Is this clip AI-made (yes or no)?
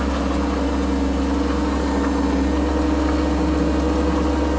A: no